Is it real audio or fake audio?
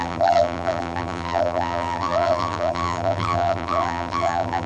fake